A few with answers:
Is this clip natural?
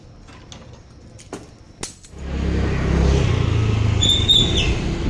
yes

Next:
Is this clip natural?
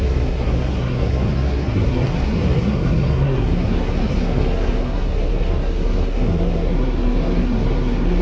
no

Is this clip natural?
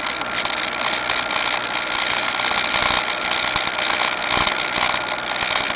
yes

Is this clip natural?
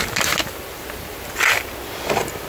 yes